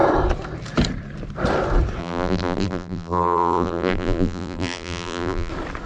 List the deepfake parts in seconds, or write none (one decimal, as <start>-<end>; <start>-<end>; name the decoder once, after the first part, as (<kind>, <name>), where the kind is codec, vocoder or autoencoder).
2.0-5.5 (vocoder, BigVGAN v2)